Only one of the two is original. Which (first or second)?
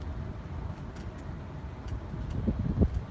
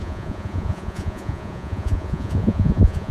first